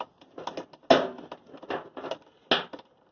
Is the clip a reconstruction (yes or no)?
no